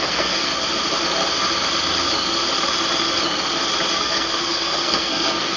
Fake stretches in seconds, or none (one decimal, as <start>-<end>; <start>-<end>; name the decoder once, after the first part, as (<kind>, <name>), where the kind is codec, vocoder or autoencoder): 0.0-0.5 (codec, SNAC); 3.9-5.6